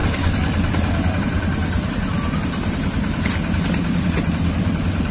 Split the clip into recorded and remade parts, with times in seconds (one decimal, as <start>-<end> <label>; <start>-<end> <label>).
0.0-5.1 remade